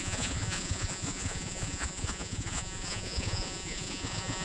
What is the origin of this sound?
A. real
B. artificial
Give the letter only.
B